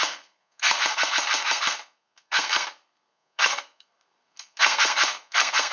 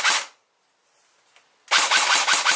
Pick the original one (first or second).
second